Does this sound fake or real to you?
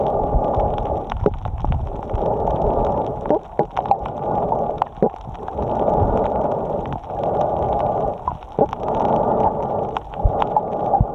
real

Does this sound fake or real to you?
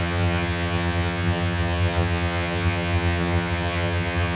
fake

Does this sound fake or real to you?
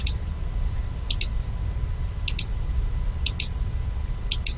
real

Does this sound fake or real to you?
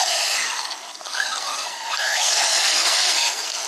fake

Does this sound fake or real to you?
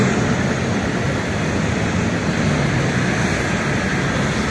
real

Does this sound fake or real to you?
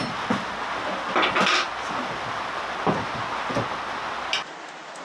real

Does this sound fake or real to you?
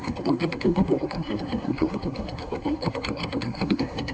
fake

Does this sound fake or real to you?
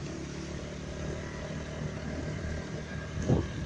real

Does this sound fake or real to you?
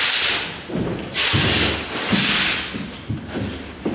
real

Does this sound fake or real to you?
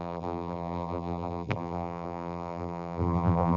fake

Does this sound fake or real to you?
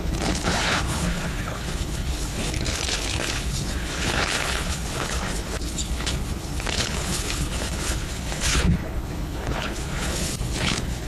fake